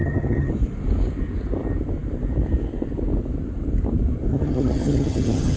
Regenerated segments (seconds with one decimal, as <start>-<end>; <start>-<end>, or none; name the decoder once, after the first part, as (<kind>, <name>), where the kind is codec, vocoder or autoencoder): 0.0-0.5 (vocoder, HiFi-GAN); 4.3-5.6